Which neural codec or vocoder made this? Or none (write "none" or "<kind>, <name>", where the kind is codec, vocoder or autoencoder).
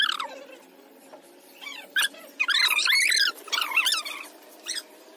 none